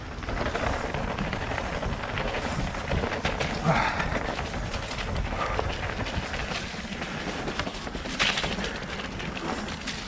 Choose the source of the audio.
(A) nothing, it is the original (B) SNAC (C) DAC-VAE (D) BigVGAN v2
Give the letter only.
A